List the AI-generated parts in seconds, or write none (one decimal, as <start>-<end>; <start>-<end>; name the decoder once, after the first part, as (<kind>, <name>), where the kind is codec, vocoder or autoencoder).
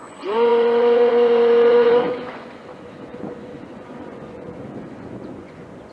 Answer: 0.0-5.9 (vocoder, Vocos)